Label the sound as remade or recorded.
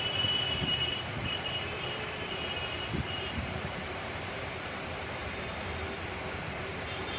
remade